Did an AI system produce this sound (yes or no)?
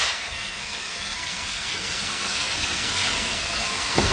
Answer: yes